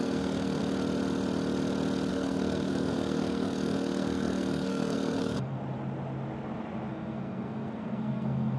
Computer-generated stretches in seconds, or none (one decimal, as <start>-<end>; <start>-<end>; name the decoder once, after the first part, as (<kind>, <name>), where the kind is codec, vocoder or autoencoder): 0.0-0.6 (codec, SNAC); 2.1-5.6; 6.9-8.6

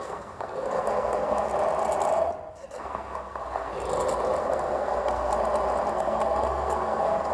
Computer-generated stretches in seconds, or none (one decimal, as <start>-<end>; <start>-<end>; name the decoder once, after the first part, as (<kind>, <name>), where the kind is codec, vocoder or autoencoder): 0.0-1.5 (codec, SNAC); 2.5-3.7; 4.4-5.3; 5.9-7.3

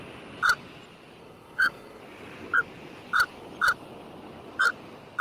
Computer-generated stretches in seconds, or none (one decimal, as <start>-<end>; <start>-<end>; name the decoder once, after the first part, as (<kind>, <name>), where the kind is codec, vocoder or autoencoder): 1.2-2.0 (codec, SNAC)